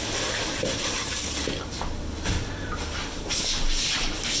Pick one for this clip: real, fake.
real